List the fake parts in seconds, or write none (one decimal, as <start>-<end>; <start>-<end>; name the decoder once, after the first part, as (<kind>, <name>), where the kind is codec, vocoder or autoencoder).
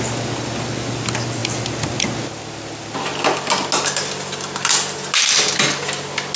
none